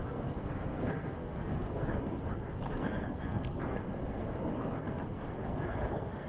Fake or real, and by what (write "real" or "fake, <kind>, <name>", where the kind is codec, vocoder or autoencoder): fake, codec, SNAC